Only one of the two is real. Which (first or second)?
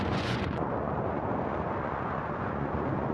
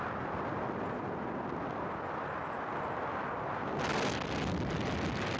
second